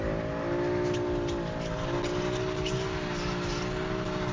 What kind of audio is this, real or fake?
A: real